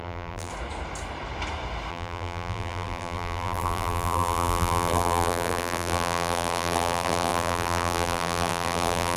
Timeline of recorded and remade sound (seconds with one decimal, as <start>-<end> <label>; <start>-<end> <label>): 0.0-0.5 remade; 0.5-1.9 recorded; 1.9-9.2 remade